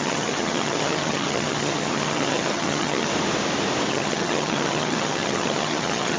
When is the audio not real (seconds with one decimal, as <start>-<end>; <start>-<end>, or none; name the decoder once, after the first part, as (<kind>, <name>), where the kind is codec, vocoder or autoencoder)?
0.0-3.1 (vocoder, HiFi-GAN); 3.9-6.2